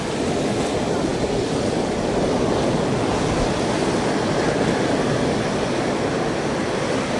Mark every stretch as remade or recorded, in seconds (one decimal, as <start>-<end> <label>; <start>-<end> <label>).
0.0-7.2 recorded